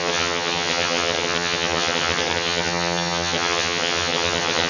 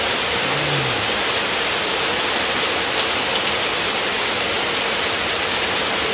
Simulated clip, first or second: first